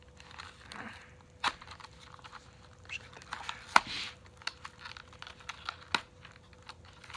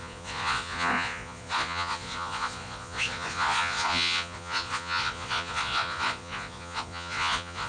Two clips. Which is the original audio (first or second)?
first